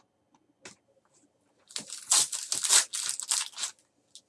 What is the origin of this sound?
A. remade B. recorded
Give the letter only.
B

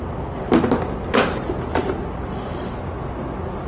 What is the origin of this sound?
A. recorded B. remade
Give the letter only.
A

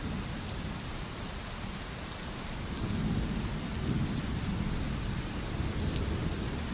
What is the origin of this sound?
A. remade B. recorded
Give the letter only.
B